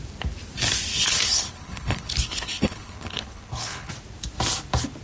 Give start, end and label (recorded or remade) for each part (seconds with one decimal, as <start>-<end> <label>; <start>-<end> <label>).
0.0-0.9 recorded; 0.9-3.9 remade; 3.9-5.0 recorded